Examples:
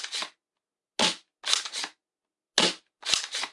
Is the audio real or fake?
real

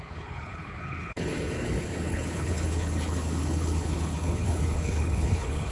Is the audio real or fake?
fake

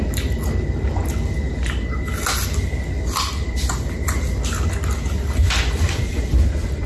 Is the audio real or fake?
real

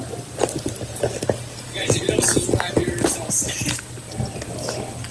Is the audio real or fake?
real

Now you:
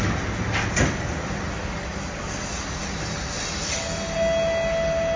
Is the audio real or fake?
real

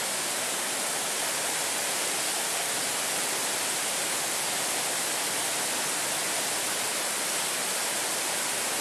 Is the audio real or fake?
real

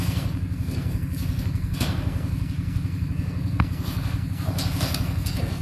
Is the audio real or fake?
fake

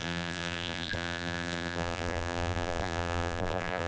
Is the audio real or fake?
fake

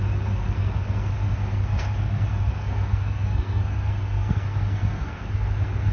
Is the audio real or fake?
fake